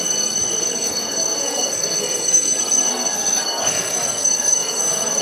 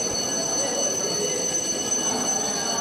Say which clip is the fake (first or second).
first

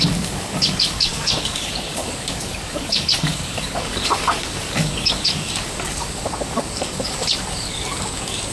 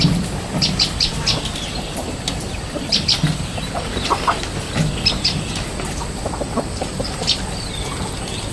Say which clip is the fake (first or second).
first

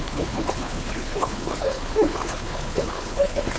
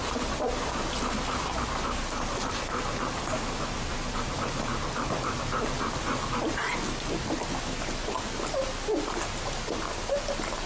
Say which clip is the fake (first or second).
first